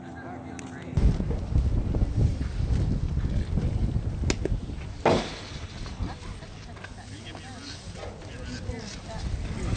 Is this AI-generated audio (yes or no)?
no